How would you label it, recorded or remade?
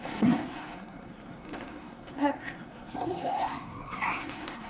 remade